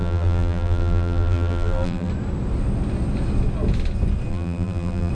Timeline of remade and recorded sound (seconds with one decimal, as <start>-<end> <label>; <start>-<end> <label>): 0.0-2.1 remade; 2.1-4.3 recorded; 4.3-5.1 remade